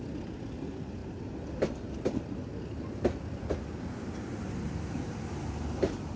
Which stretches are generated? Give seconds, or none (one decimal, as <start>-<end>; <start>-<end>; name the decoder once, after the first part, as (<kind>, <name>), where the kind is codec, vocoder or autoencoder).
none